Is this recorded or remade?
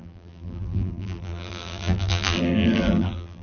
remade